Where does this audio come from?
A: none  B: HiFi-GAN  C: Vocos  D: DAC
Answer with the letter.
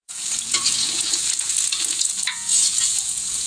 C